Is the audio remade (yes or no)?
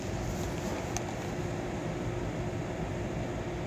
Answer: no